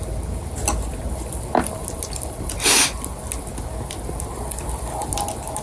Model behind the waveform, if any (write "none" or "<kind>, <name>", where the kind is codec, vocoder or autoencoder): none